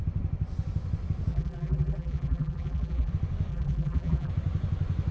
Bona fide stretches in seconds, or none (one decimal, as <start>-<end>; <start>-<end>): 0.0-1.3; 3.1-3.5; 4.3-5.1